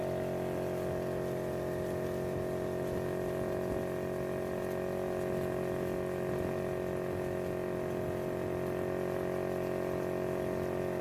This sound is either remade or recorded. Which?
recorded